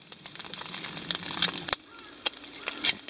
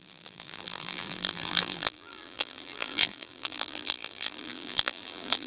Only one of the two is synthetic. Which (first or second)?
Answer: second